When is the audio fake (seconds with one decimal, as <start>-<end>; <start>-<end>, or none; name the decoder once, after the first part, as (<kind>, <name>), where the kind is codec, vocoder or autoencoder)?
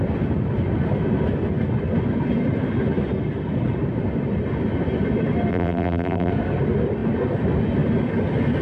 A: 5.5-6.3 (vocoder, BigVGAN v2)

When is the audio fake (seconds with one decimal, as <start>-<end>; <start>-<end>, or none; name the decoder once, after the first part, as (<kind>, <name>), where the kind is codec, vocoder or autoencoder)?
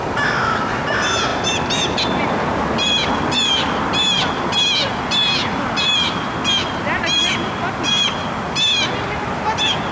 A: 7.2-7.9 (vocoder, BigVGAN v2)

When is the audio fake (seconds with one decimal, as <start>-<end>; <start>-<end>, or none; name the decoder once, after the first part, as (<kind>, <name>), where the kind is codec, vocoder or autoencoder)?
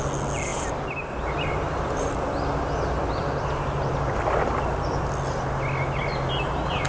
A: 0.5-4.6 (vocoder, BigVGAN v2)